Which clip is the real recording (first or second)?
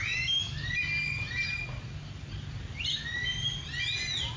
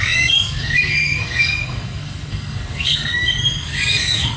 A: first